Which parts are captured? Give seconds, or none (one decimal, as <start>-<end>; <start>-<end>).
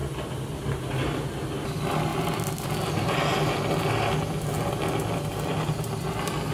0.0-2.1; 3.8-6.5